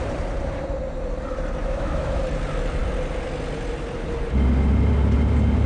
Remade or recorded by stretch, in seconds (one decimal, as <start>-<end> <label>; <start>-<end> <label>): 0.0-1.6 recorded; 1.6-2.2 remade; 2.2-5.7 recorded